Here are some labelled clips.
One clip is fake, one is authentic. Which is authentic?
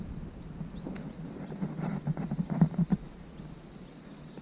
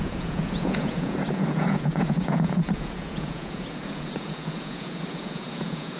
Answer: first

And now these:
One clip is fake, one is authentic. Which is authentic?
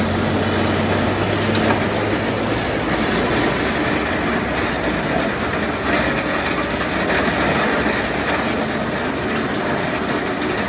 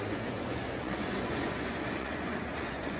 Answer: first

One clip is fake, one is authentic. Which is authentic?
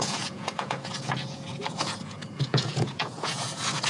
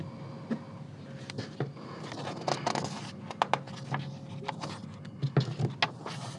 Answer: second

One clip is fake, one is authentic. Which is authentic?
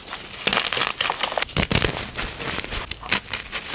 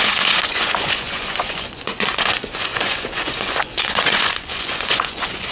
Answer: first